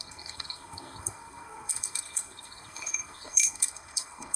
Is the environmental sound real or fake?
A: fake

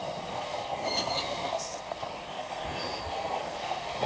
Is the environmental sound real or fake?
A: fake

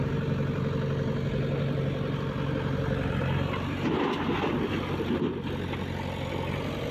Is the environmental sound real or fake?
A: real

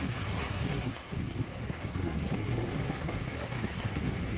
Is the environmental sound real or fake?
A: fake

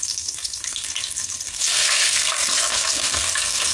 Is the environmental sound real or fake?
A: fake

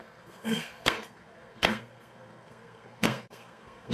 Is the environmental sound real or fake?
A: fake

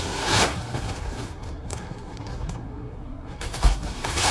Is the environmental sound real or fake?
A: fake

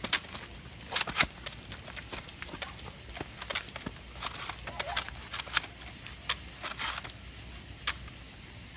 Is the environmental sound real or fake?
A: real